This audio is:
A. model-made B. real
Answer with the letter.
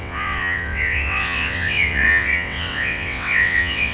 A